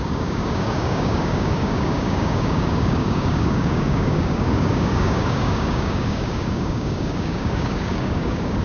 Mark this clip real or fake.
fake